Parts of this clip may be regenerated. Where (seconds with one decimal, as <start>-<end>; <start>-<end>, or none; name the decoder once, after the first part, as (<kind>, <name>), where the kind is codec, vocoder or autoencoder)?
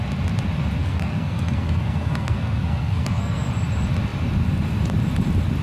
0.8-3.5 (codec, SNAC)